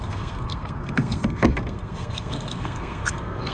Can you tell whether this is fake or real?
fake